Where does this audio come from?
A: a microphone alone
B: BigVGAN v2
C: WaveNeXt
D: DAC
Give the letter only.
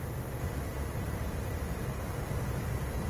B